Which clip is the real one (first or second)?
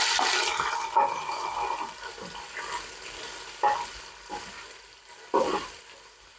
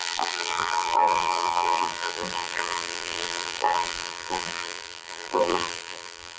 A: first